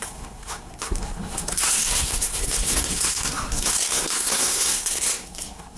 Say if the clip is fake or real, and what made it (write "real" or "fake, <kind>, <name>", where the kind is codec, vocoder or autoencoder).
fake, codec, SNAC